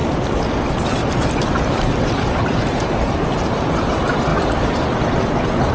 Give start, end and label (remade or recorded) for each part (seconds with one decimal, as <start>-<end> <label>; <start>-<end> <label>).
0.0-1.4 recorded; 1.4-4.3 remade; 4.3-5.7 recorded